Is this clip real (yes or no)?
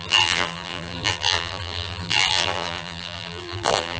no